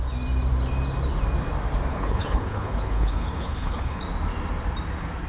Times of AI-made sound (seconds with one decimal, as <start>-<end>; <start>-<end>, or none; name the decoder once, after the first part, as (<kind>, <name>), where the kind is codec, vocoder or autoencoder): 1.9-4.0 (codec, HILCodec)